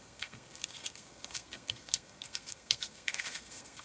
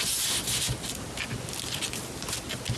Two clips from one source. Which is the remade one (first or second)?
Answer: first